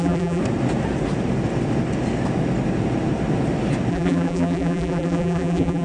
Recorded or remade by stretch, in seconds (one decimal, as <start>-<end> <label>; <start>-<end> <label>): 0.0-0.4 remade; 0.4-3.9 recorded; 3.9-5.8 remade